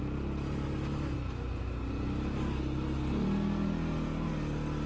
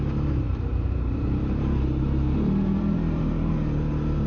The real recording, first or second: first